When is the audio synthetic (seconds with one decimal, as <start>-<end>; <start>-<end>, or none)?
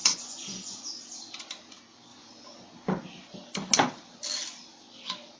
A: 0.0-0.9; 2.1-2.6